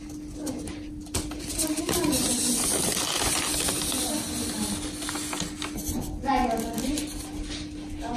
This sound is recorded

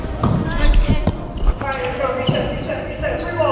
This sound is recorded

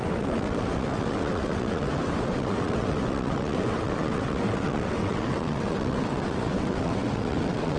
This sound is remade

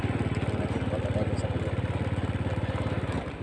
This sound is recorded